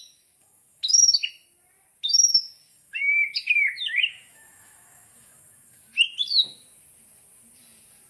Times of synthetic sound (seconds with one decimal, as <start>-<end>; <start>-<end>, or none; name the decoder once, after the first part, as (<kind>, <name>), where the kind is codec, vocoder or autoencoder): 0.4-1.0 (autoencoder, DAC-VAE); 2.7-5.9